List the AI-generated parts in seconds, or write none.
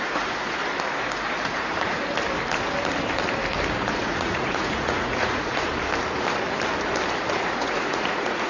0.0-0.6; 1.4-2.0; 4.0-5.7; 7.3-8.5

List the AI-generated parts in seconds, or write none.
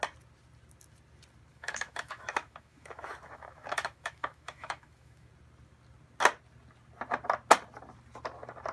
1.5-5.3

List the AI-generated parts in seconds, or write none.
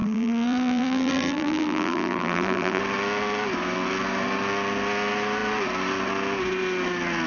0.0-2.8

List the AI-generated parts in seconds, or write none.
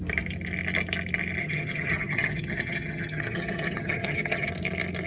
1.4-4.5